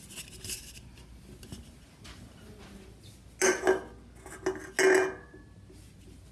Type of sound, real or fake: real